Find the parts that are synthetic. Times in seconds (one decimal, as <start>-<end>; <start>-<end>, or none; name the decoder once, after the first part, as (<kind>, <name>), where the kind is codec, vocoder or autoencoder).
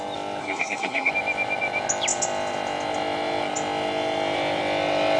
0.4-1.1 (codec, SNAC)